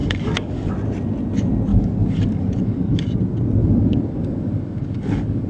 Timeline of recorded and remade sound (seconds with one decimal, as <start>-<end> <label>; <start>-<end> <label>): 0.0-0.7 remade; 0.7-1.7 recorded; 1.7-3.2 remade; 3.2-3.6 recorded; 3.6-5.5 remade